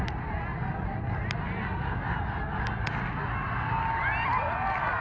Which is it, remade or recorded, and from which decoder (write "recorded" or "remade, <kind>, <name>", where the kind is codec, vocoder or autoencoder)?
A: recorded